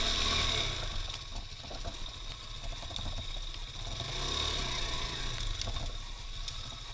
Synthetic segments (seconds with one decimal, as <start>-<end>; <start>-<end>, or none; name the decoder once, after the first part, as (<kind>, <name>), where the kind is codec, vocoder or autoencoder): none